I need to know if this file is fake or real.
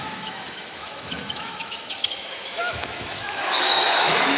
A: fake